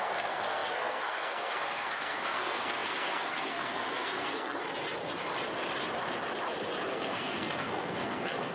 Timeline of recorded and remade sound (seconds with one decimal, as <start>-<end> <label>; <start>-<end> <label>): 0.0-4.6 remade; 4.6-6.9 recorded; 6.9-8.5 remade